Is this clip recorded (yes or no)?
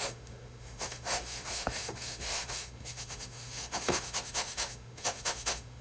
no